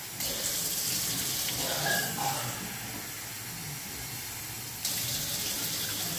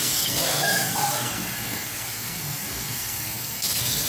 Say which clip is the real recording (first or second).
first